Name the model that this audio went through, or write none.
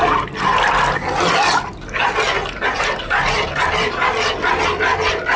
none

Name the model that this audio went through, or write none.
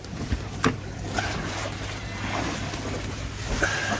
none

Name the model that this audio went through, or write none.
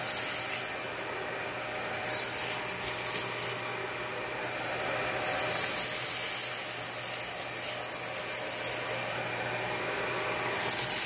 none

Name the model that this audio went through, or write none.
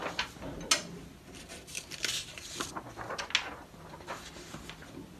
none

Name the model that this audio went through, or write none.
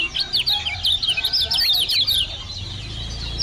none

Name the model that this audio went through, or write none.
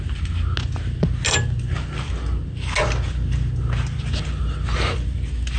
none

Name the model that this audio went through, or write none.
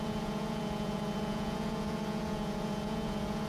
vocoder, Vocos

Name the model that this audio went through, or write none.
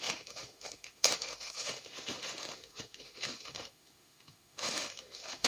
autoencoder, DAC-VAE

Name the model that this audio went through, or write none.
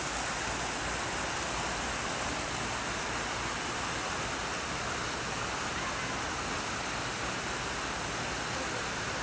none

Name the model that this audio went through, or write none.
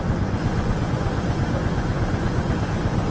vocoder, Vocos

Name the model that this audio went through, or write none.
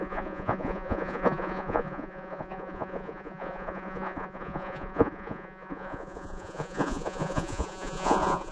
vocoder, Vocos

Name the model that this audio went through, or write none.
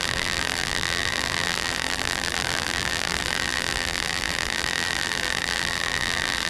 vocoder, BigVGAN v2